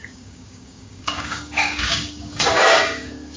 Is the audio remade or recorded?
remade